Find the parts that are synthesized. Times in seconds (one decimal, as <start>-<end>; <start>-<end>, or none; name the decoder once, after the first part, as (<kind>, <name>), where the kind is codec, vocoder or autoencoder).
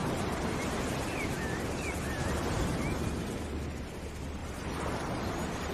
none